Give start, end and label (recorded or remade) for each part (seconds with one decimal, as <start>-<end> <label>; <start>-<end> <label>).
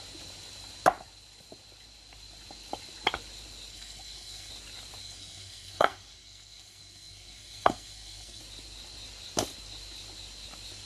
0.0-3.7 recorded; 3.7-4.5 remade; 4.5-5.0 recorded; 5.0-8.4 remade; 8.4-10.9 recorded